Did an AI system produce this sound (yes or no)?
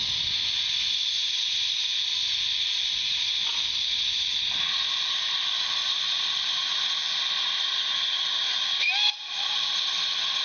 no